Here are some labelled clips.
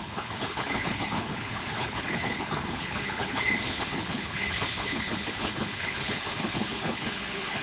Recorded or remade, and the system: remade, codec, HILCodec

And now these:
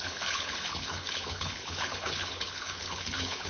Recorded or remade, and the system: remade, codec, HILCodec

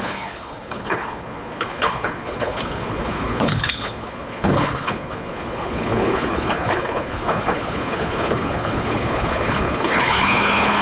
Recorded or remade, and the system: remade, codec, HILCodec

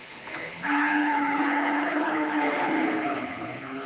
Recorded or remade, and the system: remade, codec, HILCodec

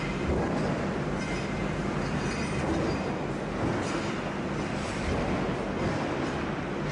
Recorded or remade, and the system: recorded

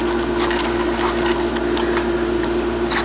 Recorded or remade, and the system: recorded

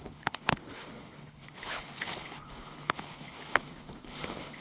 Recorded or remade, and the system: remade, codec, HILCodec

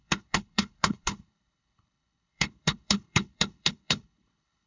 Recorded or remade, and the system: remade, codec, HILCodec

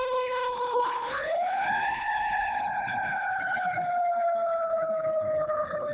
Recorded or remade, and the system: remade, codec, HILCodec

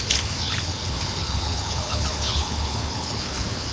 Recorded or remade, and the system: remade, codec, HILCodec